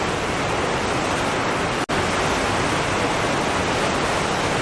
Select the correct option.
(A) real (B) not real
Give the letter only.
A